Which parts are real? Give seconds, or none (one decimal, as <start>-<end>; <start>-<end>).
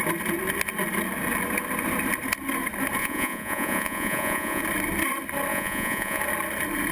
0.0-3.0; 4.6-5.5; 6.2-6.9